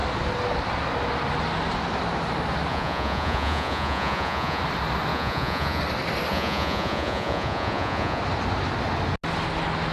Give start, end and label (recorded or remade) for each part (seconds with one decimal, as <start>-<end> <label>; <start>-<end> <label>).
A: 0.0-2.7 recorded; 2.7-4.6 remade; 4.6-5.1 recorded; 5.1-5.8 remade; 5.8-6.3 recorded; 6.3-8.2 remade; 8.2-9.9 recorded